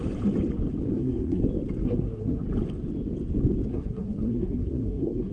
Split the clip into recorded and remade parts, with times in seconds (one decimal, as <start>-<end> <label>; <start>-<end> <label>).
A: 0.0-0.9 recorded; 0.9-1.4 remade; 1.4-1.8 recorded; 1.8-2.4 remade; 2.4-3.7 recorded; 3.7-5.3 remade